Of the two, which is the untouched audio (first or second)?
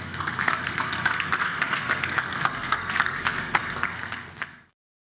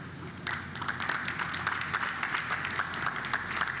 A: second